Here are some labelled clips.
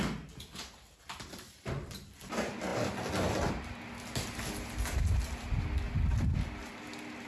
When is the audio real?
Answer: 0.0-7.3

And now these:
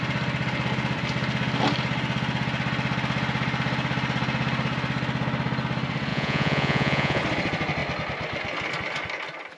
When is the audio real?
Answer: 0.0-6.1; 7.2-9.6

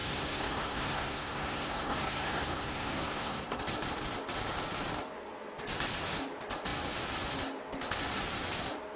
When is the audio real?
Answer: 3.6-9.0